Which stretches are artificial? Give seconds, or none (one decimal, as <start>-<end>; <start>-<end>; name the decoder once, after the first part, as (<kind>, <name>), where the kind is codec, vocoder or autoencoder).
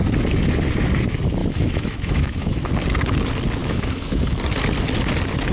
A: 1.4-2.7 (autoencoder, DAC-VAE); 3.6-4.4